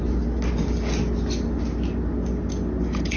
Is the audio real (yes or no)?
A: yes